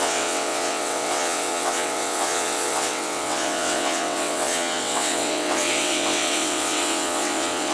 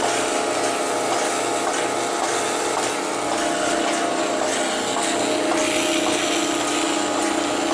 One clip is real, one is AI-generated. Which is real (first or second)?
second